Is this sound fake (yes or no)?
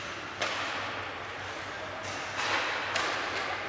no